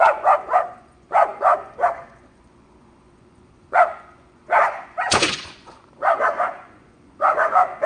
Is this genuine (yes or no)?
no